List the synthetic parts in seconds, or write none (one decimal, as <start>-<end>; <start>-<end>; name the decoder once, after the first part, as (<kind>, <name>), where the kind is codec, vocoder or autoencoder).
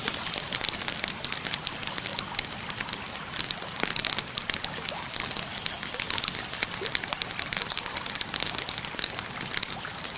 none